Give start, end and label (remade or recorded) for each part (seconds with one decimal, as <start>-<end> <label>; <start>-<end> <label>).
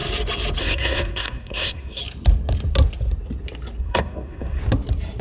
0.0-0.6 recorded; 0.6-2.0 remade; 2.0-3.8 recorded; 3.8-4.6 remade; 4.6-5.2 recorded